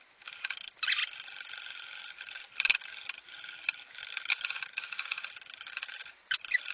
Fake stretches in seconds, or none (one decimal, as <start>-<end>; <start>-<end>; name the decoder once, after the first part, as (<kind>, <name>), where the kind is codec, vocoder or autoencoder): 1.0-3.3 (vocoder, BigVGAN v2)